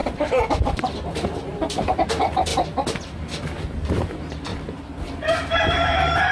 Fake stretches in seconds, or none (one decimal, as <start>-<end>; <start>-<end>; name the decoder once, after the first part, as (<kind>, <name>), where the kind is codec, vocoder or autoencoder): 0.5-2.5 (vocoder, BigVGAN v2); 3.9-4.5; 5.0-6.3